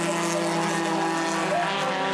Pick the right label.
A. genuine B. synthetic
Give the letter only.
A